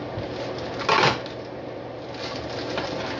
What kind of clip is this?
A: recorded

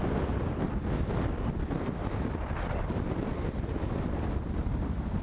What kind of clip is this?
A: recorded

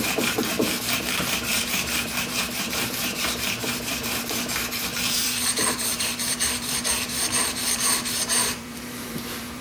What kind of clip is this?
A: remade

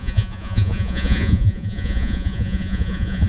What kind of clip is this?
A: remade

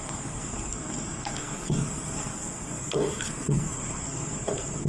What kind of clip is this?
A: remade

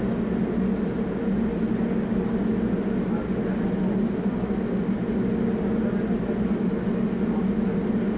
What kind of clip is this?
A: recorded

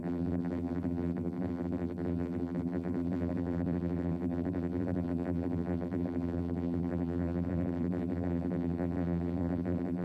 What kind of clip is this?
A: remade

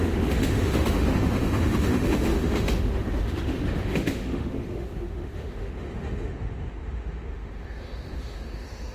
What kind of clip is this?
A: remade